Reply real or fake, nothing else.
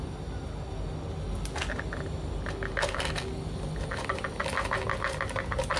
real